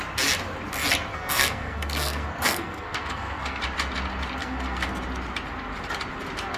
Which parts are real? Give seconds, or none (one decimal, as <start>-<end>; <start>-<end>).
0.0-1.1; 3.6-4.4; 5.0-6.6